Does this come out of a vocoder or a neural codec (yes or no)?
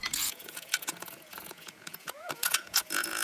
yes